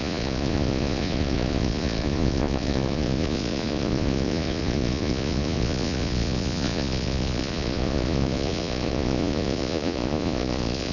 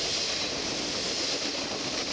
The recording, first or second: second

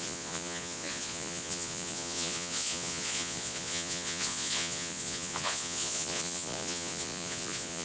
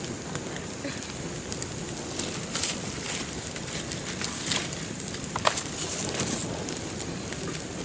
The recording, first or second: second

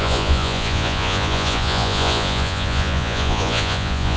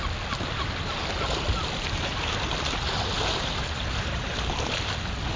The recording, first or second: second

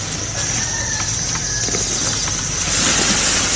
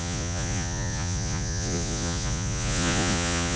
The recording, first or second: first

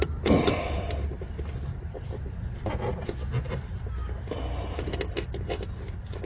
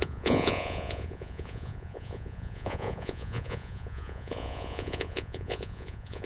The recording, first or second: first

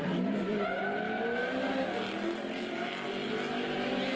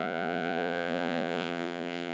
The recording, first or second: first